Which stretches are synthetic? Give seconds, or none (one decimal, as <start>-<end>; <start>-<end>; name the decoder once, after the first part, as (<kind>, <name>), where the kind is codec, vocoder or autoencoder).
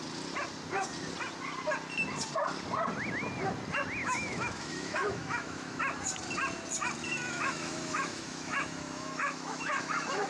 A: 4.0-5.8 (autoencoder, DAC-VAE); 7.0-10.3